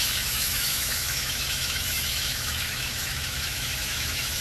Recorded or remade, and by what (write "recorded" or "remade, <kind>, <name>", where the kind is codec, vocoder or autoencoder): remade, autoencoder, DAC-VAE